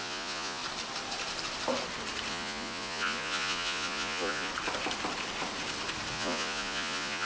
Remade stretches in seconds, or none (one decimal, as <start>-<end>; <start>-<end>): 0.0-0.6; 2.3-4.5; 6.1-7.3